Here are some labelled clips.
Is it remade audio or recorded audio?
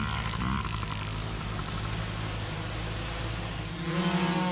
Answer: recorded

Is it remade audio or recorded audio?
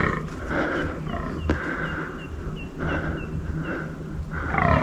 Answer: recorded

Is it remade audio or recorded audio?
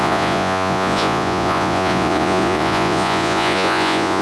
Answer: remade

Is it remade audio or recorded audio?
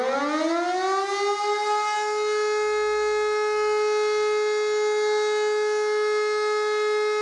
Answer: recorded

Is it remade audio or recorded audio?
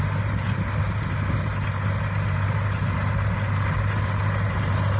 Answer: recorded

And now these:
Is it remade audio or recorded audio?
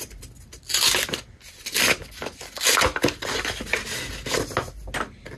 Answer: recorded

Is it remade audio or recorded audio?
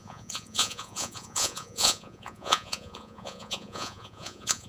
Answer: remade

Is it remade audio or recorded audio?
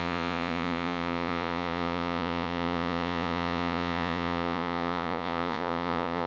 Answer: remade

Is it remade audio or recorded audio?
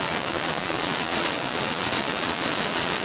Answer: remade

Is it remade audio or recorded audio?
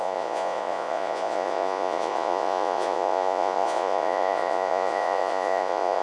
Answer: remade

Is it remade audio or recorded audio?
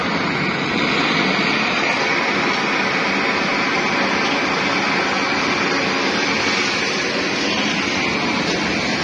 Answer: recorded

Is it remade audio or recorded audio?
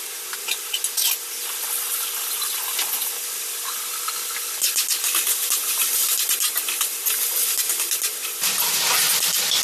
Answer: recorded